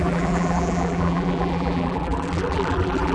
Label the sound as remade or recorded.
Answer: remade